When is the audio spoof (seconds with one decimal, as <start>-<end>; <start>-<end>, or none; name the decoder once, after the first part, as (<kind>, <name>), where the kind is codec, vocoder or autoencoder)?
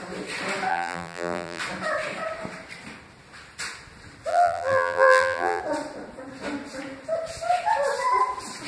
0.7-1.6 (vocoder, BigVGAN v2); 4.3-5.6